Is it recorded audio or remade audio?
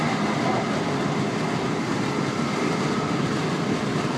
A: recorded